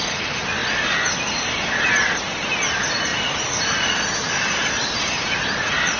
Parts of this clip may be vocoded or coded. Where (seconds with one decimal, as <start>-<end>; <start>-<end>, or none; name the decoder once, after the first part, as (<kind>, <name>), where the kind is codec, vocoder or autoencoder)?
none